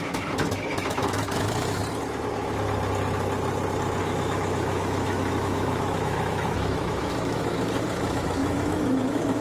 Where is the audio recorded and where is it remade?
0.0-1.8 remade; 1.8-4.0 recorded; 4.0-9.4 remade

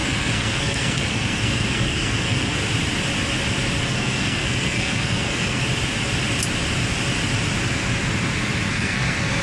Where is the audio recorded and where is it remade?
0.0-2.6 remade; 2.6-3.8 recorded; 3.8-5.6 remade; 5.6-8.7 recorded; 8.7-9.4 remade